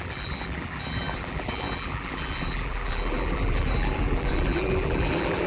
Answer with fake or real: fake